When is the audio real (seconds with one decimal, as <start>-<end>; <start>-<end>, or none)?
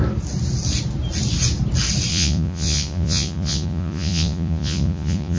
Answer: 0.0-2.1